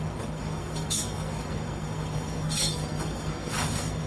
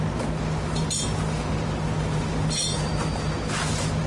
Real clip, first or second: second